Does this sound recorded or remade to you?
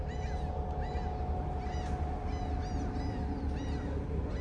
recorded